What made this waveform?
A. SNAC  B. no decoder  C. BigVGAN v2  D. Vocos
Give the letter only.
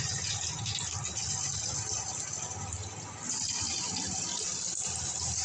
B